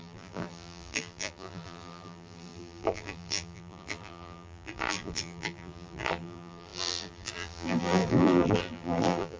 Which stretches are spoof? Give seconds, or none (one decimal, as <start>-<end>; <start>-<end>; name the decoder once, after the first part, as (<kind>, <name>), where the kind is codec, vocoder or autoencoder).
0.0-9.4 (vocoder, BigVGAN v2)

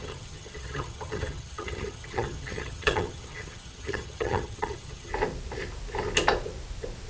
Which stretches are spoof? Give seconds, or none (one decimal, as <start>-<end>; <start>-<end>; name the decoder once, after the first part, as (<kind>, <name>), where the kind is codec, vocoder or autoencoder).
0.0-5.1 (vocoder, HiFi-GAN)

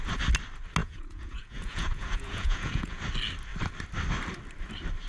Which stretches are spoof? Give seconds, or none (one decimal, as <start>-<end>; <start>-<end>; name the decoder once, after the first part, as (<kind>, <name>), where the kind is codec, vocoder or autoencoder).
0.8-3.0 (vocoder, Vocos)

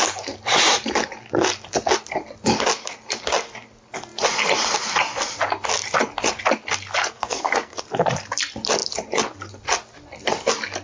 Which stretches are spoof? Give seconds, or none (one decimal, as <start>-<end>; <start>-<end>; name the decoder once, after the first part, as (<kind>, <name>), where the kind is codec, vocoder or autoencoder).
7.0-7.8 (codec, SNAC)

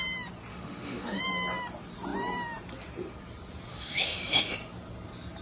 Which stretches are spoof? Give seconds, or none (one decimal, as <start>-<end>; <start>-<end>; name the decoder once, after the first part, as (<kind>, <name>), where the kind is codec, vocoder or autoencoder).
0.5-1.2 (autoencoder, DAC-VAE); 3.7-4.5

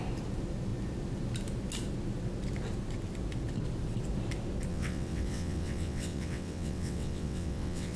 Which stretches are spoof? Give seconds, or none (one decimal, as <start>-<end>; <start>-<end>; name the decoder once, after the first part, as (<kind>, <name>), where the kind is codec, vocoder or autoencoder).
4.7-8.0 (vocoder, WaveNeXt)

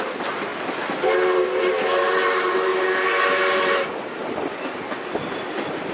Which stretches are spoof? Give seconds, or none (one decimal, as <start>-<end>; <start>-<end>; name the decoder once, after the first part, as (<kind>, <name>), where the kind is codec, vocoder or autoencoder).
none